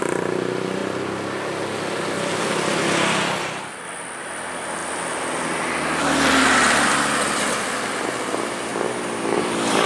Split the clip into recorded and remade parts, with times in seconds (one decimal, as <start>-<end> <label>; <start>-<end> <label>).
0.0-0.8 remade; 0.8-4.2 recorded; 4.2-8.7 remade; 8.7-9.4 recorded; 9.4-9.9 remade